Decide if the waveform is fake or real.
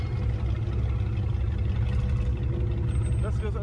real